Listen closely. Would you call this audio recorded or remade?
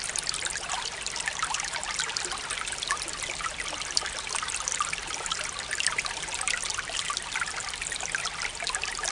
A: recorded